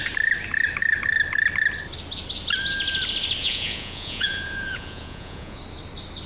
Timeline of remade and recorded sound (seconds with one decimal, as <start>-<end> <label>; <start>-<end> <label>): 0.0-3.4 recorded; 3.4-5.6 remade; 5.6-6.3 recorded